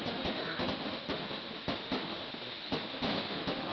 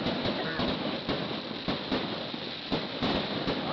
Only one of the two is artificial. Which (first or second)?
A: first